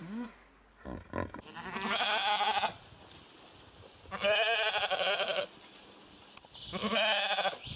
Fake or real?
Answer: real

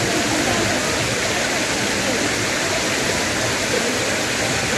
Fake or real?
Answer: real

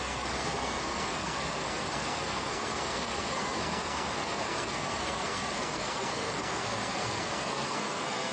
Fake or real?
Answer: fake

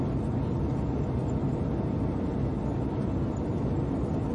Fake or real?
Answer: real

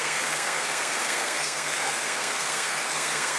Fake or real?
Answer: fake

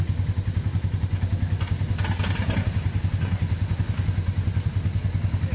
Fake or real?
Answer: real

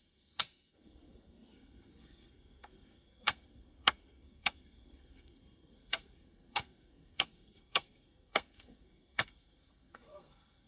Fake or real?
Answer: fake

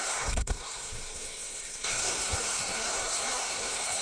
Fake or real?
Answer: fake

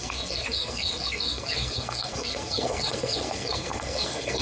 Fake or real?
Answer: fake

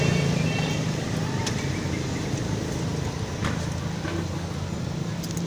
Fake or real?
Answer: real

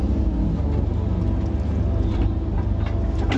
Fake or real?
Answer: real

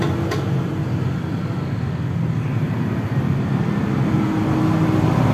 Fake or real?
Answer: real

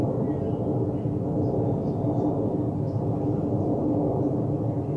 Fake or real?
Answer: real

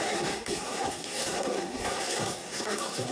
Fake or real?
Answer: fake